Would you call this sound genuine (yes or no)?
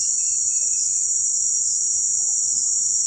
yes